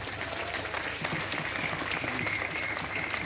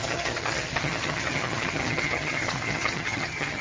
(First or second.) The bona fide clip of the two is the first